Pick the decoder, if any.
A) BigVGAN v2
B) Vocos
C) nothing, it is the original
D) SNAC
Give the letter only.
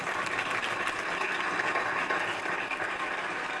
C